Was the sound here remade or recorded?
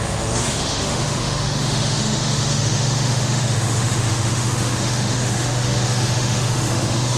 remade